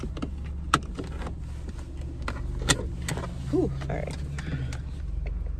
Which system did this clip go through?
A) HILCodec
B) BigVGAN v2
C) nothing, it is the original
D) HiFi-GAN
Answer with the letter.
C